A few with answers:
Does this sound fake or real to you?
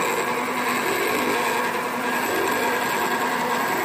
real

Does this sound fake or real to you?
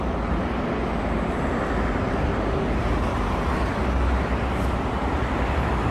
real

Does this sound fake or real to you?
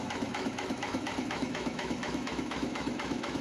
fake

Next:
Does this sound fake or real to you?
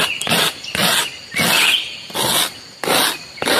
real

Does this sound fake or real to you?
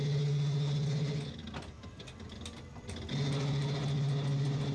real